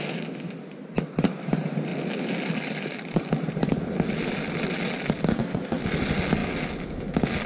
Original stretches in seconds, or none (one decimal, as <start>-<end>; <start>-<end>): 0.0-5.3; 5.8-7.5